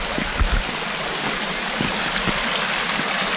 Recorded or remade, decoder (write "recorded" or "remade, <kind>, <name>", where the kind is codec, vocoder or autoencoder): recorded